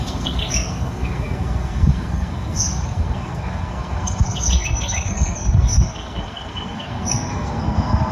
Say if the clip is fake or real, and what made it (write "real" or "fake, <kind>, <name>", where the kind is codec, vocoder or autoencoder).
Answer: fake, codec, SNAC